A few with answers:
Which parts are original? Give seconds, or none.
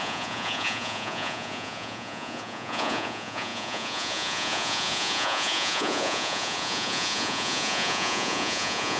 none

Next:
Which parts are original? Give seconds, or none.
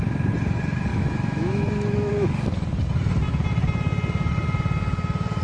0.0-0.9; 2.1-5.4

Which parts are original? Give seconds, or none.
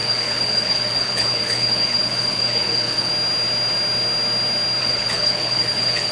3.1-4.8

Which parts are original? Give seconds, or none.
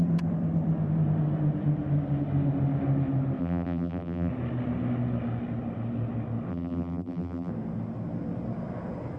0.0-3.4; 4.3-6.5; 7.5-9.2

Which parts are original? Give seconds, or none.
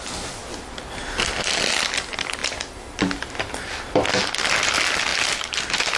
0.0-6.0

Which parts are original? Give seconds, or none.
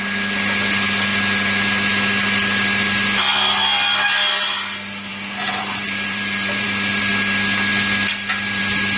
0.0-5.1; 7.0-9.0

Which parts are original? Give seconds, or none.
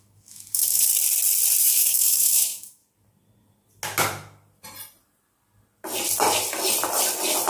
0.9-1.6; 2.8-7.5